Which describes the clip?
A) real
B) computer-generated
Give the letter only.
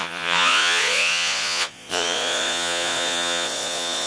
B